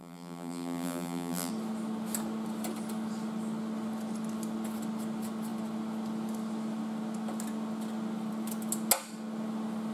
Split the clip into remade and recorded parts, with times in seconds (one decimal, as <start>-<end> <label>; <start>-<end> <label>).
0.0-1.5 remade; 1.5-9.9 recorded